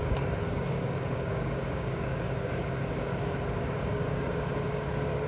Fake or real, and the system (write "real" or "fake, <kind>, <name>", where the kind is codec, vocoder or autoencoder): fake, codec, DAC